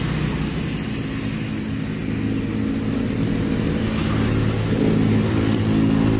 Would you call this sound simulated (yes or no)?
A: no